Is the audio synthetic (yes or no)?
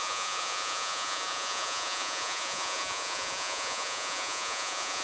yes